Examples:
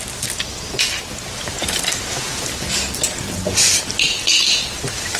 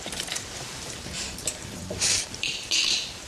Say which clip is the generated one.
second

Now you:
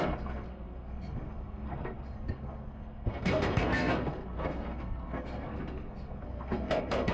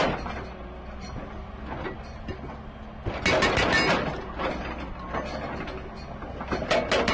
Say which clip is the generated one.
first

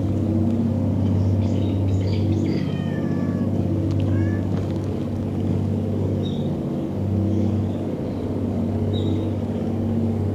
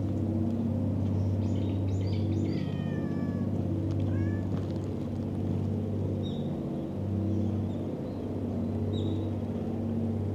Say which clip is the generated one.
first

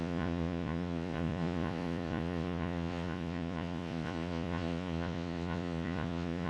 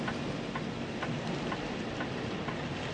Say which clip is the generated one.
first